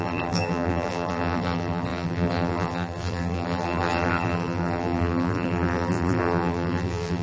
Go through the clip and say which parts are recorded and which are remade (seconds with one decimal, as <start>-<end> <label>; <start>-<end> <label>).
0.0-7.2 remade